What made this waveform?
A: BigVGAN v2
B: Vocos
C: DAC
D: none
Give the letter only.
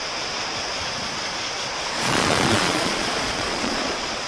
B